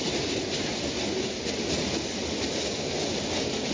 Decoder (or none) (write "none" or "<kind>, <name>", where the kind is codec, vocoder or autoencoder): none